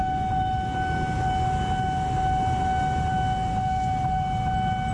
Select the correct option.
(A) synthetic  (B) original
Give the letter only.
B